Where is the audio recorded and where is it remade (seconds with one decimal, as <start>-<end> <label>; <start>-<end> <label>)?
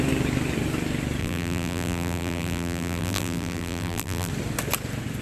0.0-1.2 recorded; 1.2-4.3 remade; 4.3-5.2 recorded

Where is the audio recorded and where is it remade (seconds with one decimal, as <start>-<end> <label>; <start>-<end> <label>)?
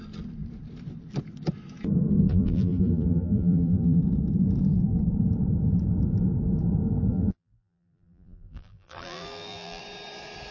0.0-2.3 recorded; 2.3-4.0 remade; 4.0-7.1 recorded; 7.1-9.8 remade; 9.8-10.5 recorded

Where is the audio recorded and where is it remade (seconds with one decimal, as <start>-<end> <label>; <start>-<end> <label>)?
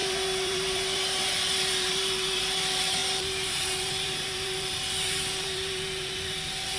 0.0-6.8 remade